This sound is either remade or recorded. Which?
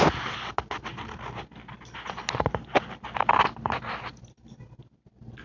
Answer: recorded